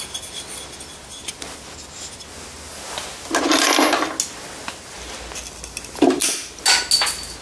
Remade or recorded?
recorded